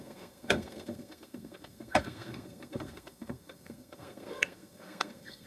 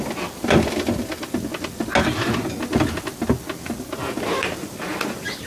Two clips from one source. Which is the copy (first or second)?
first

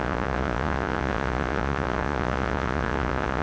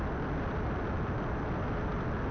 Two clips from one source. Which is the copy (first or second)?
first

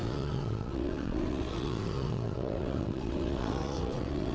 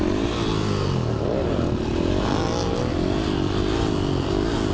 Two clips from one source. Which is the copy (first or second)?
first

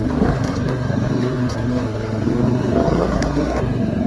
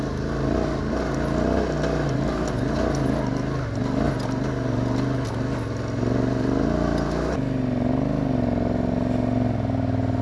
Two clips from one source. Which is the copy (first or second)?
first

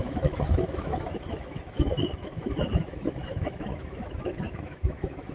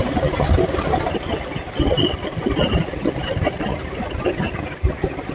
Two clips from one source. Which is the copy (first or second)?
first